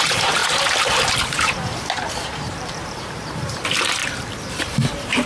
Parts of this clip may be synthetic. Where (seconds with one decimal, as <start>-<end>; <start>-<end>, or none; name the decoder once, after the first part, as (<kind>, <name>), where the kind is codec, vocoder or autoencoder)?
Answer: 0.0-4.0 (vocoder, BigVGAN v2); 4.6-5.3